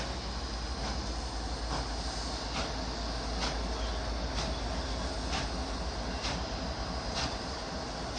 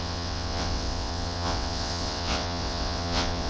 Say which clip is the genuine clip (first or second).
first